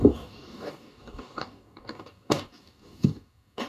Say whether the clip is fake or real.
fake